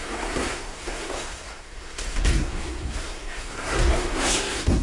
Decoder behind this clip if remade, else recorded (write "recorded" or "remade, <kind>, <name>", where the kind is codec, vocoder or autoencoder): remade, codec, SNAC